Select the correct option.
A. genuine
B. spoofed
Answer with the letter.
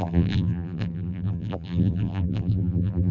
B